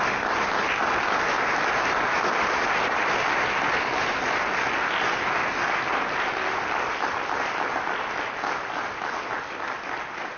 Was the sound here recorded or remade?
recorded